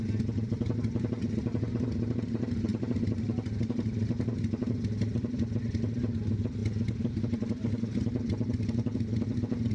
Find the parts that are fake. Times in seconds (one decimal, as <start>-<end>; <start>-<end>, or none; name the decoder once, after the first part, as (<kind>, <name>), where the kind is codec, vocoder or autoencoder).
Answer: none